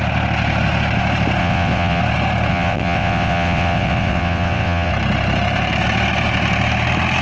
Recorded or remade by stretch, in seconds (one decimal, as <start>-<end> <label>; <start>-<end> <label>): 0.0-1.4 recorded; 1.4-2.0 remade; 2.0-2.5 recorded; 2.5-4.9 remade; 4.9-7.2 recorded